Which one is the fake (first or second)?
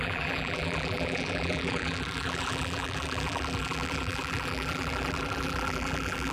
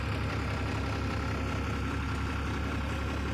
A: first